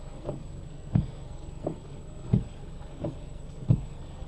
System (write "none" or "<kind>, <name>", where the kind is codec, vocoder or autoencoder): codec, SNAC